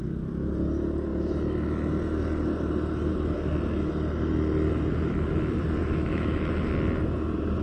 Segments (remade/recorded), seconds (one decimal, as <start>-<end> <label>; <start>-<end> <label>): 0.0-5.8 recorded; 5.8-6.7 remade; 6.7-7.6 recorded